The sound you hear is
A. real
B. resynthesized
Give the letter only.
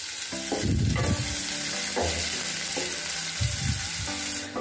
A